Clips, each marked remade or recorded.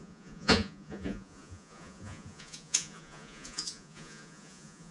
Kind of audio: remade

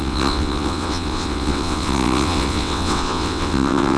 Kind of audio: remade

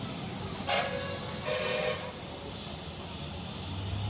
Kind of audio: recorded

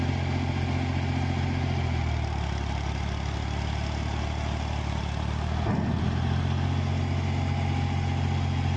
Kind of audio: recorded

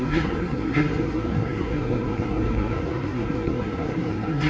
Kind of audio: remade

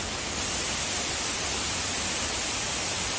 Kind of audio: recorded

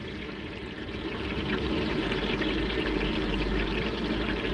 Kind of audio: remade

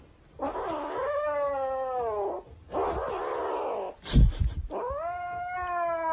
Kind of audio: recorded